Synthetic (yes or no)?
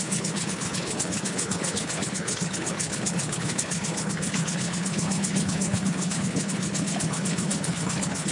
yes